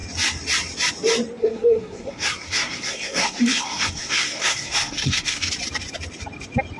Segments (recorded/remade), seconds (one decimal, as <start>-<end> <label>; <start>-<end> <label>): 0.0-1.4 recorded; 1.4-5.5 remade; 5.5-6.8 recorded